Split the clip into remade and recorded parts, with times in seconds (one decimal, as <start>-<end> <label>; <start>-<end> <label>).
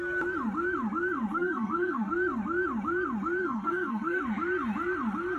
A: 0.0-1.3 recorded; 1.3-2.1 remade; 2.1-3.4 recorded; 3.4-4.2 remade; 4.2-5.4 recorded